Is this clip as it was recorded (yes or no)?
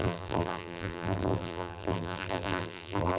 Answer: no